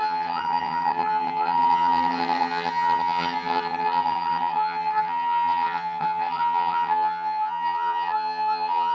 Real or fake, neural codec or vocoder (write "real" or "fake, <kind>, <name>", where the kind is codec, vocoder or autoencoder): fake, vocoder, HiFi-GAN